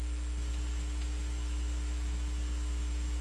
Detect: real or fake real